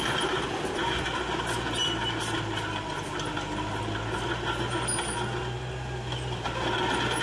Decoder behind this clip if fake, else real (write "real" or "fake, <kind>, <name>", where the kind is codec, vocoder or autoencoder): real